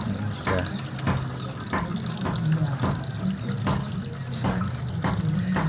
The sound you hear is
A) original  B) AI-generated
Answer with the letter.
A